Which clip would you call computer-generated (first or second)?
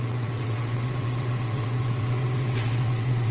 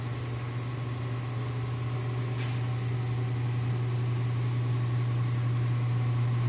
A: first